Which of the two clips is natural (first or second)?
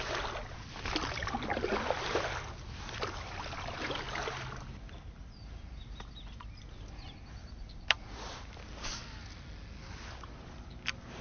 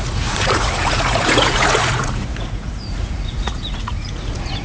first